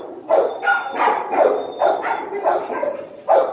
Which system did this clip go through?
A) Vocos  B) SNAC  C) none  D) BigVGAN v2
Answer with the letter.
D